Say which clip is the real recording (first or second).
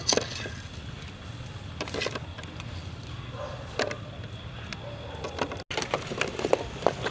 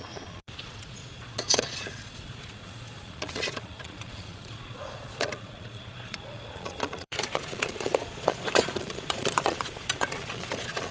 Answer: first